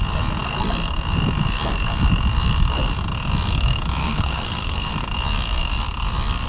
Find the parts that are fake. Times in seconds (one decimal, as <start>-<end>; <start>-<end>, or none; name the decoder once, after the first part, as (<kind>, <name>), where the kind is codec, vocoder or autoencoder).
4.0-4.9 (codec, SNAC)